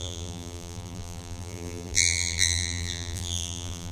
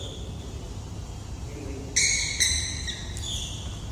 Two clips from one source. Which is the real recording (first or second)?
second